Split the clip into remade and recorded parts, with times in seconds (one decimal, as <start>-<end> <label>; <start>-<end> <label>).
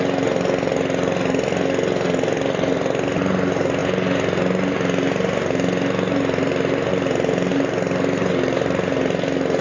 0.0-9.6 recorded